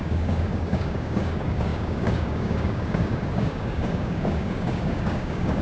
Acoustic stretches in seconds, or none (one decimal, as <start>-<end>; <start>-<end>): none